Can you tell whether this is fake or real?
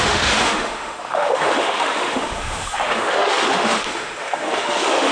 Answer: fake